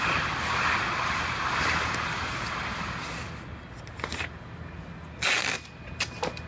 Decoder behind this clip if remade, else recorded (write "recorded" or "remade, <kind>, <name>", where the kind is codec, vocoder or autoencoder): recorded